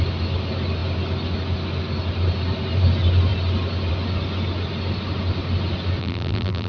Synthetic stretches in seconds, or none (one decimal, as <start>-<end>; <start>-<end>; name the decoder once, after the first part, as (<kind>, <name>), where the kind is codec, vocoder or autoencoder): 6.0-6.7 (vocoder, BigVGAN v2)